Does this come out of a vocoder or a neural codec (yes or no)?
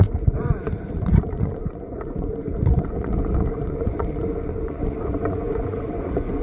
yes